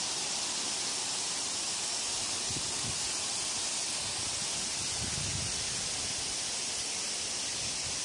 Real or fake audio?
real